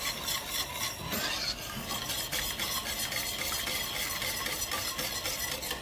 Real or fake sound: real